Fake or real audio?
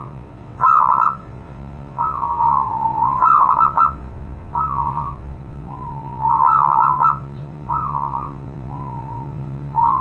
fake